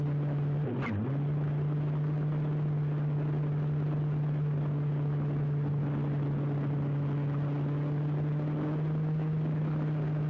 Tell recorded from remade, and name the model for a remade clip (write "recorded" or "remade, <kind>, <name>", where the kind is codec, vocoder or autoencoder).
recorded